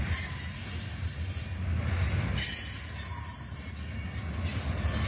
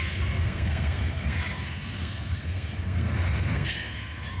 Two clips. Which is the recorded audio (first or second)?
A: first